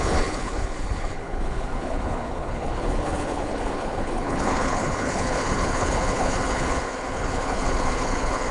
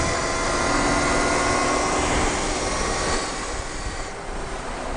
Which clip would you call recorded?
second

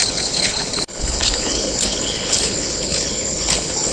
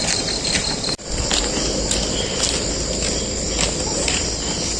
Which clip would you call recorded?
second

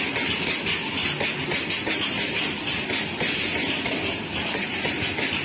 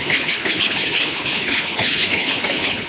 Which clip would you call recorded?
first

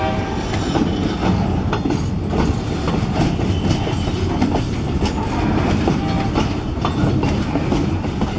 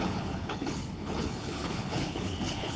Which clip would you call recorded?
first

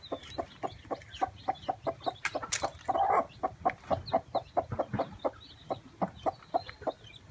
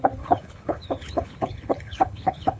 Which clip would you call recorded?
first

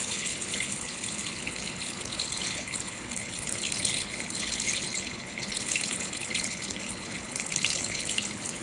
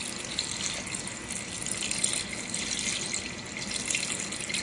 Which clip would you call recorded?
second